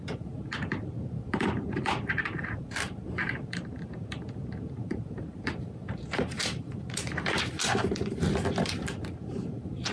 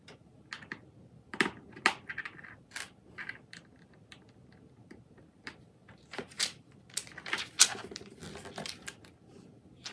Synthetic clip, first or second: first